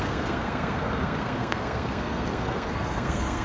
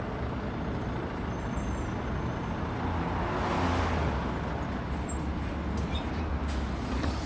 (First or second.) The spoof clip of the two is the first